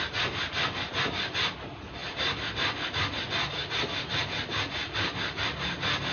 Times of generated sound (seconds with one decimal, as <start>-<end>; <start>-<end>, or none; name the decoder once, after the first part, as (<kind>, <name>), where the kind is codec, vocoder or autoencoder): none